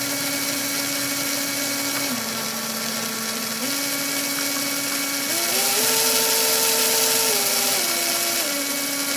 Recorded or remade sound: recorded